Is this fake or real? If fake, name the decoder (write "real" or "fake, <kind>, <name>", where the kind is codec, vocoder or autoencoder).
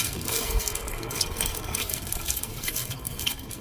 fake, codec, SNAC